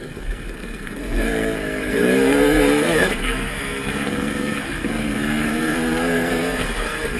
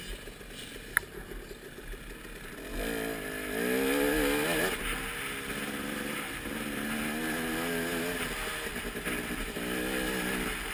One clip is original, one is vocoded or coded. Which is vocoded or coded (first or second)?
first